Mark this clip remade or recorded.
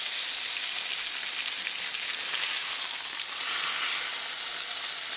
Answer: recorded